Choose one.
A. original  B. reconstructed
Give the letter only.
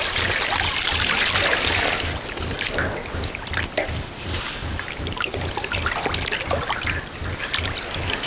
A